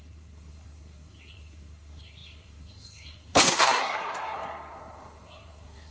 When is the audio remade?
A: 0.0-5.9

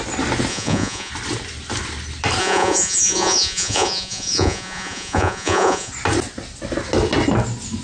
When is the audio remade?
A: 0.5-1.1; 2.4-5.9

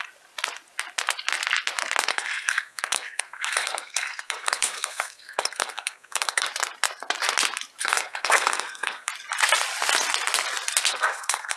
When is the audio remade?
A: 2.1-6.5; 7.8-9.1; 10.9-11.6